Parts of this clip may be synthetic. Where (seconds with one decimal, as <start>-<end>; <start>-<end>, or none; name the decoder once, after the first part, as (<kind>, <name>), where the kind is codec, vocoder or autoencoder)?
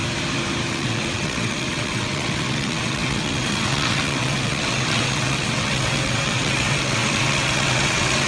0.7-8.3 (vocoder, WaveNeXt)